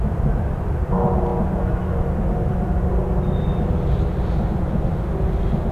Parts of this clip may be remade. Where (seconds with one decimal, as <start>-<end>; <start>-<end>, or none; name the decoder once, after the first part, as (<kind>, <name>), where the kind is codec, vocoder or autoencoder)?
none